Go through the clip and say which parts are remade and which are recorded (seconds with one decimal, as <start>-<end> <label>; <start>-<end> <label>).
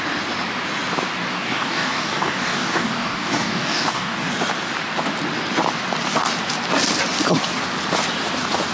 0.0-1.3 recorded; 1.3-4.3 remade; 4.3-8.7 recorded